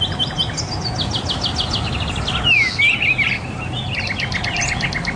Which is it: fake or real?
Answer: real